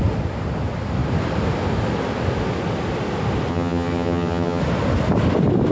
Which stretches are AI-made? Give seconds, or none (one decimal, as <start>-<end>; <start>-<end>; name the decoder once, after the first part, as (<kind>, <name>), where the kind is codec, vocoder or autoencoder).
3.5-4.6 (vocoder, HiFi-GAN)